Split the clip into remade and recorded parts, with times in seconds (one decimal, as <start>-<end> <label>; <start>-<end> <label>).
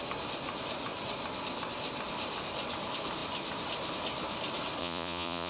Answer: 0.0-4.8 recorded; 4.8-5.5 remade